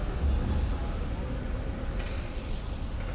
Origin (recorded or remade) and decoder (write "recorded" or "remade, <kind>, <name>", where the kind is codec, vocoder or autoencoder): recorded